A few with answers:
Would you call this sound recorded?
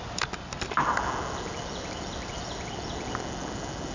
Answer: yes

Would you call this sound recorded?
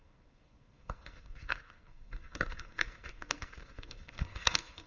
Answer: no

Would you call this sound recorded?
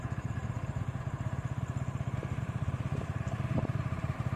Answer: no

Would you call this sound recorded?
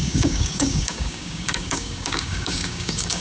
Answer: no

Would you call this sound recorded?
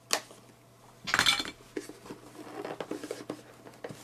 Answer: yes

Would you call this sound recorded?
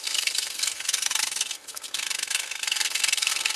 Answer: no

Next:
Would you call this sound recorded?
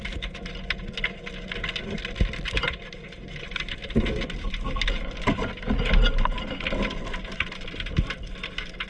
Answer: yes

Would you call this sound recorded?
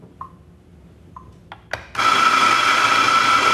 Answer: yes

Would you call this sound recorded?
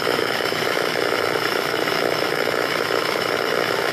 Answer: no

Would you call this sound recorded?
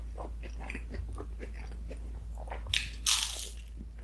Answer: yes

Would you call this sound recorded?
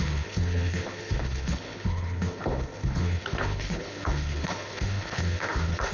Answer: no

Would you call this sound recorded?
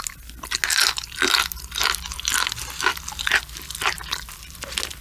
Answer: yes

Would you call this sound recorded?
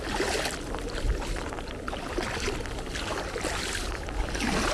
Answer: yes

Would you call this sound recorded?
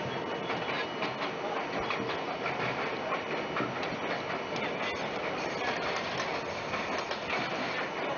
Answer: yes